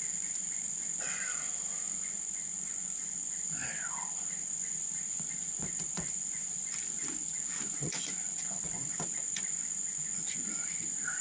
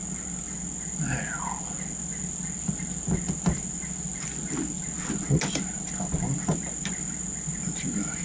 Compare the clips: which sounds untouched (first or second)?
second